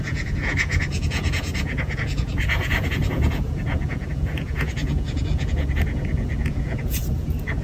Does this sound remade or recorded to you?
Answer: remade